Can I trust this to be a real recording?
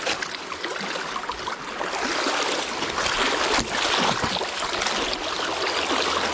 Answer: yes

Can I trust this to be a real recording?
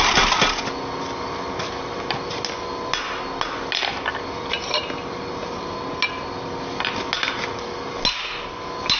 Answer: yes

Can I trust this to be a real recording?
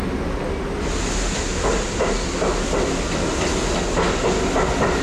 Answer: yes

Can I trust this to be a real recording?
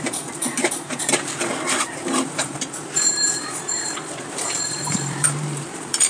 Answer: no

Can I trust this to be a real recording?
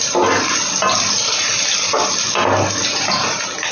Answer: yes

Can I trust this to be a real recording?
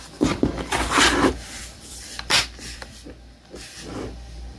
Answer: no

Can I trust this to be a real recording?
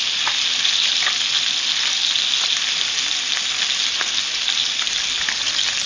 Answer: yes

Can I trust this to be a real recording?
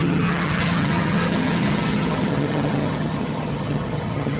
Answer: no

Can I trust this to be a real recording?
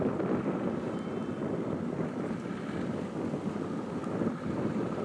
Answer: yes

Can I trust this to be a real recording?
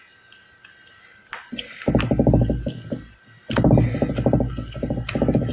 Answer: yes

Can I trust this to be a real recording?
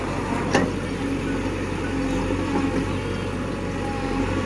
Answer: yes